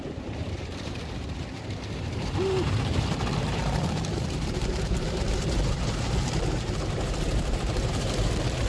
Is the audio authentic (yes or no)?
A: no